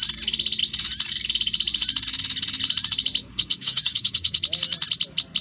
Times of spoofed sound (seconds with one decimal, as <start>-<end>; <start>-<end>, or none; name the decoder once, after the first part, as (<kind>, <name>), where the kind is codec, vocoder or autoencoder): 3.2-4.4 (codec, DAC)